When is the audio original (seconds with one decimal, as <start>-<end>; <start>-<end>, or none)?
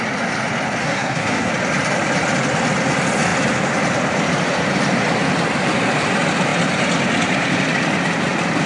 0.0-0.8; 1.5-8.7